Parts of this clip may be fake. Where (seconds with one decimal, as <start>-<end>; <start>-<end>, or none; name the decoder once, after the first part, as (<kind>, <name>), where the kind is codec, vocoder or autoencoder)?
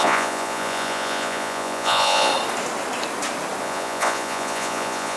0.0-2.3 (vocoder, Vocos); 3.6-5.2